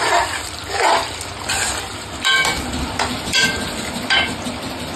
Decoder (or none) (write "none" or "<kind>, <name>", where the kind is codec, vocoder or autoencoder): vocoder, BigVGAN v2